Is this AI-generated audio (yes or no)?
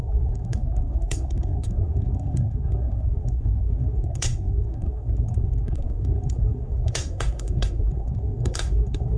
yes